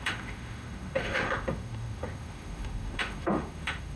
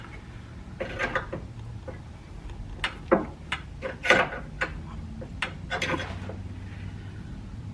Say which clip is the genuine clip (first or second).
second